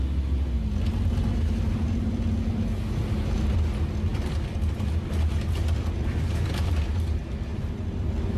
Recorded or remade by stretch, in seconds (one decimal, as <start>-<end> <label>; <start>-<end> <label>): 0.0-8.4 recorded